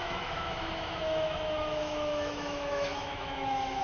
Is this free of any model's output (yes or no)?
no